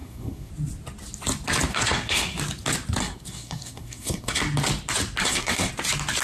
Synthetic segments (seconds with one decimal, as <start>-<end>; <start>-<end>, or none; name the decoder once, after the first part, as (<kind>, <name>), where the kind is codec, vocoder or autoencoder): 0.0-0.5 (codec, SNAC); 1.7-2.4; 3.0-4.4; 5.2-5.7